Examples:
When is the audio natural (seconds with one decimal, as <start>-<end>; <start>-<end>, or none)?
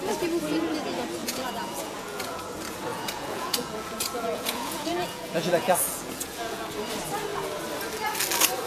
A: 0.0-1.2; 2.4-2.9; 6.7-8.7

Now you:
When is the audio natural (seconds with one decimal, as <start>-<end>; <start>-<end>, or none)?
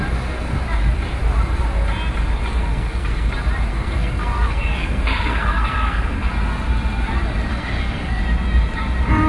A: 0.0-2.5; 3.3-3.7; 6.3-7.5; 8.2-9.3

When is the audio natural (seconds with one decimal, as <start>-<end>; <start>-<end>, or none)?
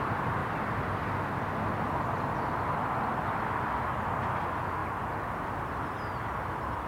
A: 0.0-4.8; 5.3-6.9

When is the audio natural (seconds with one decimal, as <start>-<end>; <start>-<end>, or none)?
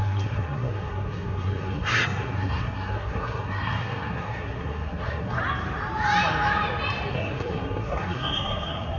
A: 5.4-7.1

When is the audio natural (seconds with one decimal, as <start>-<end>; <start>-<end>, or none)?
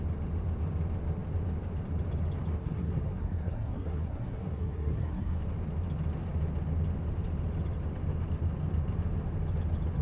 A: 0.0-2.6; 5.4-10.0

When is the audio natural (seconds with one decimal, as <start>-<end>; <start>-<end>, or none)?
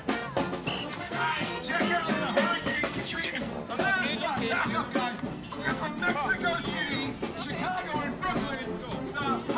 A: 0.0-1.0; 1.7-2.6; 3.5-5.3; 6.0-9.6